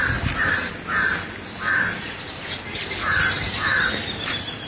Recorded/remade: recorded